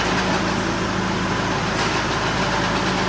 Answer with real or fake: real